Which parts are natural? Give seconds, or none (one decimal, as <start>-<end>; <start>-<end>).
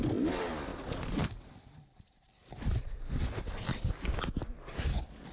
0.0-5.3